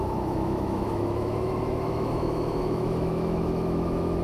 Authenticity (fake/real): fake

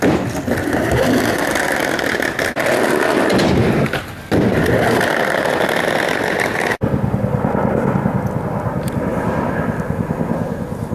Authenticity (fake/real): real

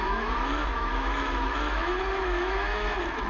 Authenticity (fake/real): fake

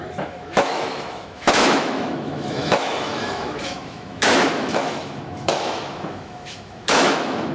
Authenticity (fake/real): fake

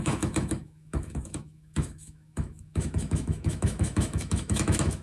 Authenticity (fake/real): fake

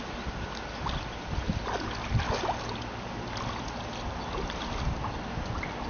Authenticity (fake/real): real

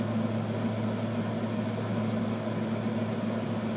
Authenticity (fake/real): real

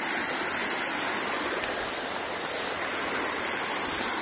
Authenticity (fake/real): real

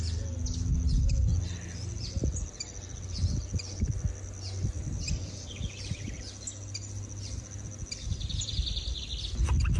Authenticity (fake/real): real